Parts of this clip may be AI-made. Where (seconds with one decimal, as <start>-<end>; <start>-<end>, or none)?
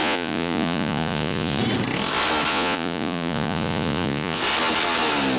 0.0-1.6; 2.5-4.4